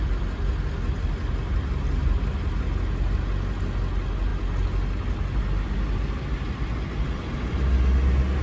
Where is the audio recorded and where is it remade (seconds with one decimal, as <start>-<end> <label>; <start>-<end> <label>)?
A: 0.0-8.4 recorded